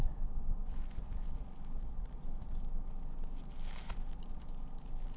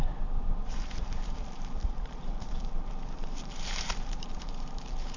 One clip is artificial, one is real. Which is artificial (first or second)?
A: second